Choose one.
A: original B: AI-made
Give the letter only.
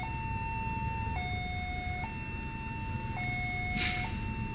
A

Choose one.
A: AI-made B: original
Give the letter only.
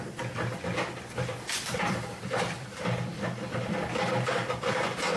A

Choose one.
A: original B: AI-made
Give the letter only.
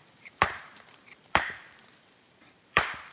B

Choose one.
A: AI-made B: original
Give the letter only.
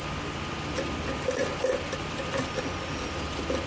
B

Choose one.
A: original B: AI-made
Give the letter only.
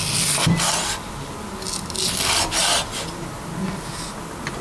A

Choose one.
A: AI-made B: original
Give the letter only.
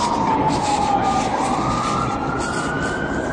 B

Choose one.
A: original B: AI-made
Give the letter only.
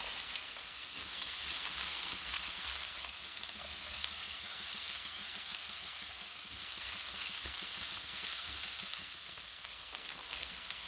B